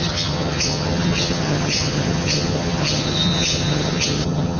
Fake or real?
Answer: fake